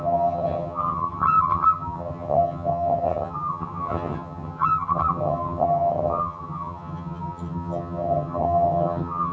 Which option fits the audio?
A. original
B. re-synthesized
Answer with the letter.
B